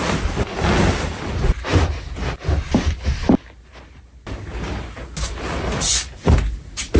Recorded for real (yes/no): yes